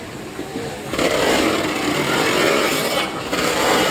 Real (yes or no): no